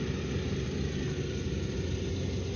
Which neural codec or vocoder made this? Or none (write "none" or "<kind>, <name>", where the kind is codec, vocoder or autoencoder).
none